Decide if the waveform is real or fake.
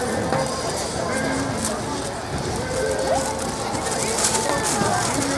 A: real